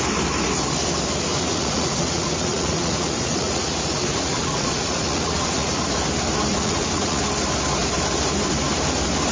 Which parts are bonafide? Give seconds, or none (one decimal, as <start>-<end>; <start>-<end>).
0.0-1.3; 5.8-6.5; 7.2-9.3